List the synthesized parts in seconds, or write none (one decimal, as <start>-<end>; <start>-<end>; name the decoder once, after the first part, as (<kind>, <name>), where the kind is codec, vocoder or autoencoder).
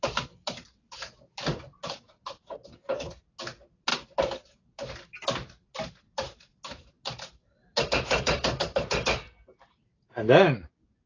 none